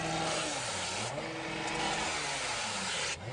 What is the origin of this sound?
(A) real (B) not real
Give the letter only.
A